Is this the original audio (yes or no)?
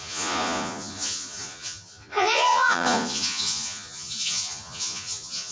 no